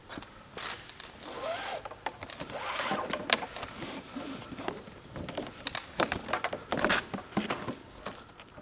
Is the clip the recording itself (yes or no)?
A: no